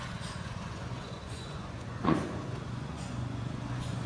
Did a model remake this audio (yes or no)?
yes